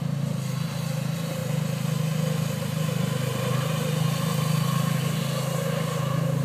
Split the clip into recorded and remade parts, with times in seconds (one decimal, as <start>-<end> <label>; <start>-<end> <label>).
0.0-6.4 recorded